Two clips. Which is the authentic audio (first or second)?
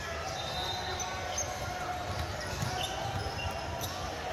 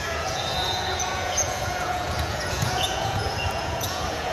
first